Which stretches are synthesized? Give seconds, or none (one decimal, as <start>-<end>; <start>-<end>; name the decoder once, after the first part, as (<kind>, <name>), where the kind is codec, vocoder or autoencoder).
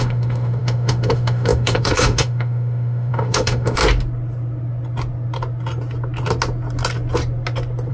0.0-3.8 (autoencoder, DAC-VAE)